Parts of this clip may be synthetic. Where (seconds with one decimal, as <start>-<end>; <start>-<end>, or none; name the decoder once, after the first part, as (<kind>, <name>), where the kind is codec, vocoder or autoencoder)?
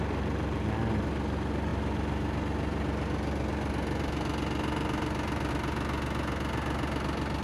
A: none